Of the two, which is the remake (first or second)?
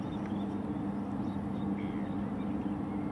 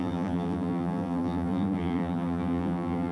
second